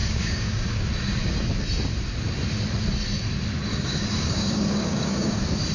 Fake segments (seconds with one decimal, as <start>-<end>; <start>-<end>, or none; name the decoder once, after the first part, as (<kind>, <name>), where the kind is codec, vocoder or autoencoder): 0.0-0.9 (codec, DAC); 3.7-5.3